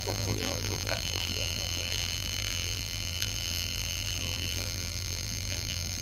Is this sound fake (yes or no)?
yes